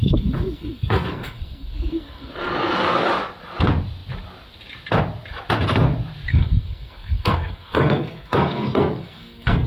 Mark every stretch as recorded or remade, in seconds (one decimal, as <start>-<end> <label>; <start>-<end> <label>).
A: 0.0-2.3 remade; 2.3-6.3 recorded; 6.3-9.7 remade